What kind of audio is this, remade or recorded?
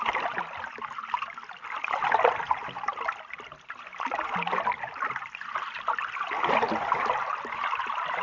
recorded